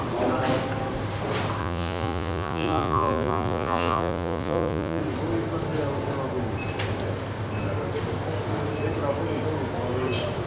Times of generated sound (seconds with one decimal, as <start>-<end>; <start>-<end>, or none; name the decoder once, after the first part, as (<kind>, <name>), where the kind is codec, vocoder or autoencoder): 1.6-5.0 (vocoder, Vocos)